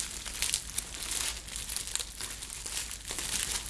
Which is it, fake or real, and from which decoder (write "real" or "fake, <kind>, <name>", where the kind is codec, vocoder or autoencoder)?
real